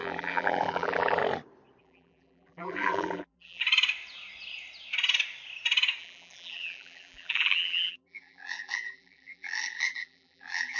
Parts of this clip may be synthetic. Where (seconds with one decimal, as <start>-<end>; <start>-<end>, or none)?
0.0-1.2; 1.8-3.6; 6.0-10.8